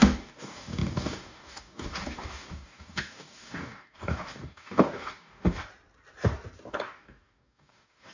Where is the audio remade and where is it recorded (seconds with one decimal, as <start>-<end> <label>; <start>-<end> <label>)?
0.0-5.7 remade; 5.7-6.7 recorded; 6.7-8.1 remade